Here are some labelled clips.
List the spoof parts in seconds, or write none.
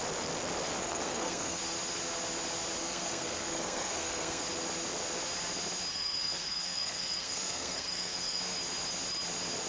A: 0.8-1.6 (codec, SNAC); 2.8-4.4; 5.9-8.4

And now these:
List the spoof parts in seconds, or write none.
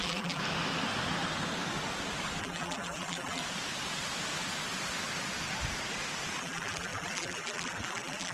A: 0.0-0.4 (vocoder, BigVGAN v2); 2.4-3.4; 6.4-8.3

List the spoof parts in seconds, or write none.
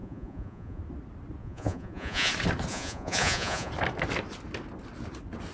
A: 0.0-0.8 (vocoder, Vocos); 1.4-2.3; 2.7-3.7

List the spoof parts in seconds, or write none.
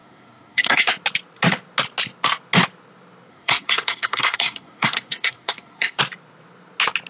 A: 0.0-0.9 (codec, SNAC); 3.3-6.0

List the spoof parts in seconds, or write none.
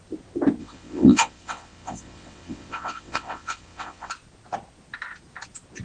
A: 0.6-4.1 (vocoder, WaveNeXt)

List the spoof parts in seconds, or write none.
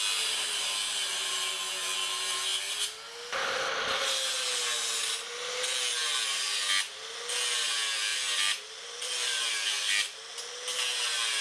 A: 6.0-6.6 (vocoder, BigVGAN v2); 8.1-9.5